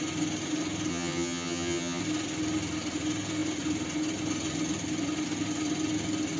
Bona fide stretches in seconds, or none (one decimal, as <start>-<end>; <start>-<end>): 0.0-0.9; 2.0-6.4